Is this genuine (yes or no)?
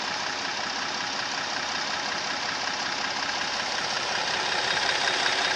yes